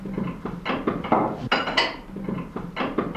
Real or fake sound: real